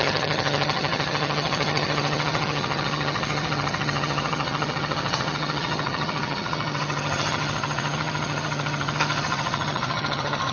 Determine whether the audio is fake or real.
fake